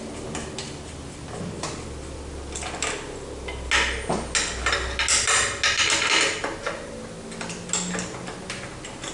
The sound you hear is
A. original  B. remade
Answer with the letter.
A